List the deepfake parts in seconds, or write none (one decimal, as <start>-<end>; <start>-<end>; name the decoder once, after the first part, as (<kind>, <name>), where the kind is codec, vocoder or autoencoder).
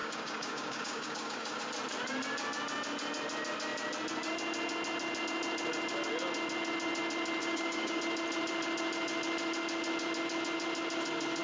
0.0-1.6 (codec, DAC); 7.4-8.0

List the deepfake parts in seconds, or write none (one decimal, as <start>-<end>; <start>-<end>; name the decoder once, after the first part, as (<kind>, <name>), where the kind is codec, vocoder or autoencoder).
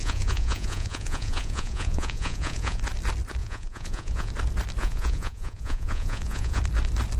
0.0-2.8 (vocoder, Vocos); 3.4-4.3; 4.8-6.6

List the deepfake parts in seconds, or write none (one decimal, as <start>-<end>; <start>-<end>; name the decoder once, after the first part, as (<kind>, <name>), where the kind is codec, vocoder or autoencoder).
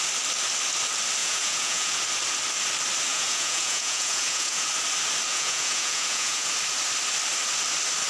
1.2-2.0 (vocoder, Vocos); 3.1-4.7; 5.3-6.5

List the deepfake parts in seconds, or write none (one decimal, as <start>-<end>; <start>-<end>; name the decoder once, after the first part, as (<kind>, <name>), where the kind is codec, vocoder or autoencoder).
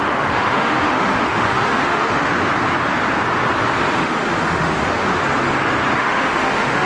0.0-2.3 (autoencoder, DAC-VAE); 4.0-5.2; 6.0-6.9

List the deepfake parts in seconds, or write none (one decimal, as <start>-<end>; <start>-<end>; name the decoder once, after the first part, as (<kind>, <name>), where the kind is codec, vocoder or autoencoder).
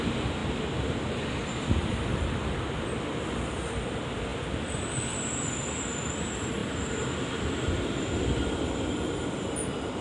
none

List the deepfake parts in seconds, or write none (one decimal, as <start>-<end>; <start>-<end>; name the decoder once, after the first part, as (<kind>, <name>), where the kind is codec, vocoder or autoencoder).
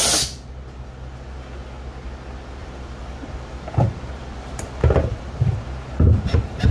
2.6-5.5 (vocoder, BigVGAN v2)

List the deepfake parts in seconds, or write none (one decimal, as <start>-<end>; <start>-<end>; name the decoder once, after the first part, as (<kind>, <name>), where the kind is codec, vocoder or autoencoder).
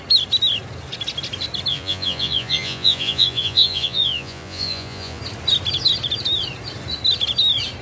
1.7-5.2 (vocoder, Vocos)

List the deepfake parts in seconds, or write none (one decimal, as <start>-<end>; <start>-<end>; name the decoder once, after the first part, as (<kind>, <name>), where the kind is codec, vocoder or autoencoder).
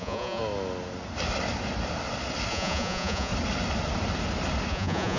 0.0-0.4 (vocoder, Vocos); 2.5-3.3; 4.7-5.2